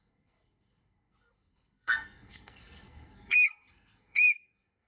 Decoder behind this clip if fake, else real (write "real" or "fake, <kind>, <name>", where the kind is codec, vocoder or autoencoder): fake, codec, SNAC